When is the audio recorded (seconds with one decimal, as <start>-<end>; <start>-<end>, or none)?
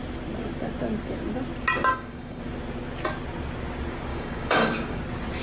0.0-1.9; 2.4-4.1; 5.0-5.4